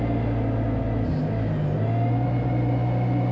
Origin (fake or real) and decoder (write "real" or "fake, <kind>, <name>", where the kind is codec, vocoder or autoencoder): real